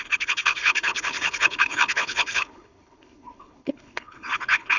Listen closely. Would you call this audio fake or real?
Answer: fake